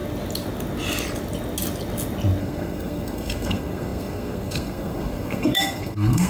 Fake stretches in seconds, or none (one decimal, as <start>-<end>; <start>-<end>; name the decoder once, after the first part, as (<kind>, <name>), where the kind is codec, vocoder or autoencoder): 2.4-6.3 (codec, SNAC)